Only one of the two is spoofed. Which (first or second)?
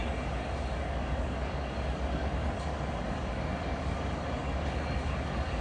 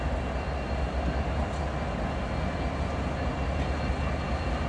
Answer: first